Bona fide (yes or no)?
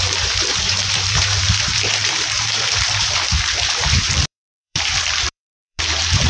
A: no